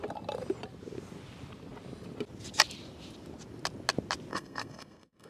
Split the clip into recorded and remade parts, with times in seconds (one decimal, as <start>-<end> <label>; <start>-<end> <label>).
0.0-4.3 recorded; 4.3-5.3 remade